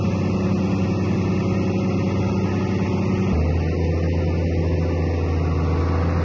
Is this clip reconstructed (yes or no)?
no